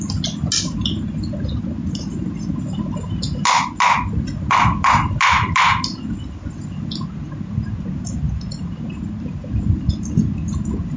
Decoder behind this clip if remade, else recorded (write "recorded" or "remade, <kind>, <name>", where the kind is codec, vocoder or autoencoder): recorded